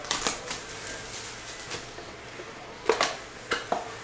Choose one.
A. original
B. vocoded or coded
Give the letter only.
A